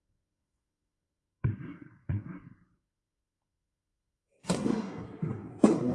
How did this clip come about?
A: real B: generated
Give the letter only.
B